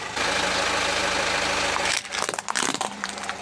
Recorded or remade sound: remade